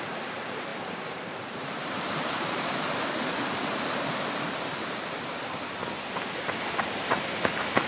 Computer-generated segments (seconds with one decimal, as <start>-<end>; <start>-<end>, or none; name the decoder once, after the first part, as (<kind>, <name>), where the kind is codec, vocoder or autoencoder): 0.0-5.8 (vocoder, BigVGAN v2); 6.5-7.9